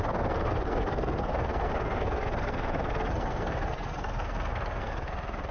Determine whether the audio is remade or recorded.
remade